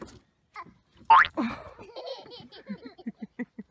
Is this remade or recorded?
recorded